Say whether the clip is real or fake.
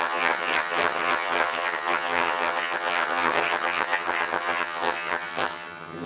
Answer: fake